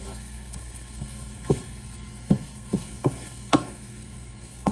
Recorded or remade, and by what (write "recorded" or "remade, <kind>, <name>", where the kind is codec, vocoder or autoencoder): remade, codec, SNAC